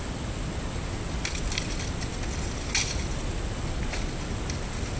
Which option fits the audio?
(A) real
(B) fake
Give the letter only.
A